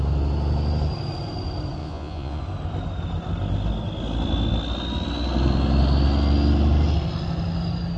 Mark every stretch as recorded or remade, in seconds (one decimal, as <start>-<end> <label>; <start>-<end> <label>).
0.0-1.8 recorded; 1.8-2.4 remade; 2.4-8.0 recorded